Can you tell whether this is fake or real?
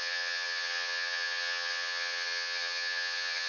fake